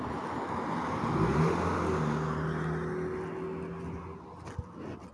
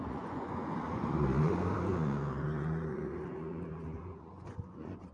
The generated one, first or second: second